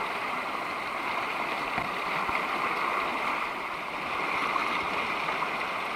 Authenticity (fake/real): real